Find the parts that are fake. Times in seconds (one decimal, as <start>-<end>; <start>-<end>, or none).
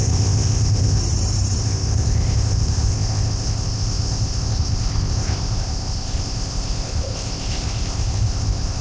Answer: 0.0-1.0; 1.6-8.8